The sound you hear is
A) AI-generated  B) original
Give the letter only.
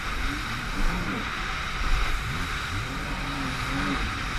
A